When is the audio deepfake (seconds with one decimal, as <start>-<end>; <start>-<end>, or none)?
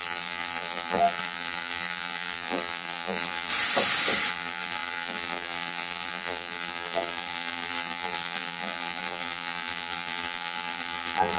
0.0-3.5; 4.3-11.4